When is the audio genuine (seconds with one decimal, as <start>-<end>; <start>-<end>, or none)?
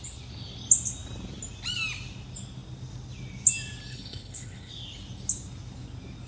0.0-3.9; 4.7-6.3